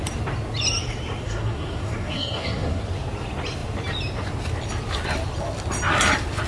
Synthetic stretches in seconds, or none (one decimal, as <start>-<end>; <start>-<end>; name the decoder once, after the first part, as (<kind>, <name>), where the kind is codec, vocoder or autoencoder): 1.2-2.8 (codec, SNAC)